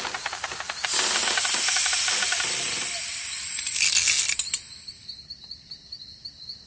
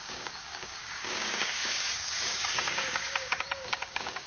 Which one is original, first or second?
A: first